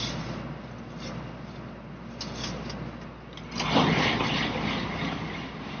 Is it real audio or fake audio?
real